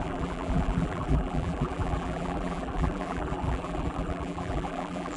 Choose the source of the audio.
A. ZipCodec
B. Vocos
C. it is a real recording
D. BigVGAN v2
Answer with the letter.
D